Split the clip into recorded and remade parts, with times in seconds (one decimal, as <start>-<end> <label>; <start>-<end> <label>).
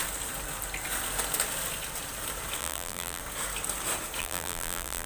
0.0-2.6 recorded; 2.6-3.2 remade; 3.2-4.2 recorded; 4.2-5.1 remade